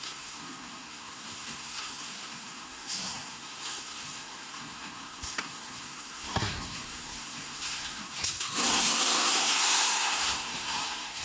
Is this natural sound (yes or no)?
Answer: no